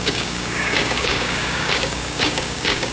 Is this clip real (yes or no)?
no